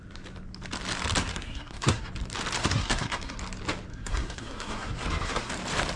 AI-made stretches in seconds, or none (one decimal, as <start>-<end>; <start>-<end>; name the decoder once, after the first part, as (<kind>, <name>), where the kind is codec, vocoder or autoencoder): 1.3-2.1 (codec, SNAC); 2.6-3.4; 3.9-5.5